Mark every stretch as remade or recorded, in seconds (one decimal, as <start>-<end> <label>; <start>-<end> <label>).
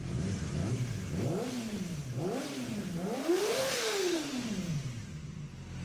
0.0-3.2 recorded; 3.2-4.5 remade; 4.5-5.8 recorded